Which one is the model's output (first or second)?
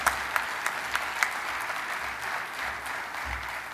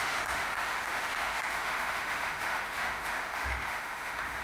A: second